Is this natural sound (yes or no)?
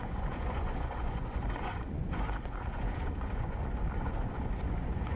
no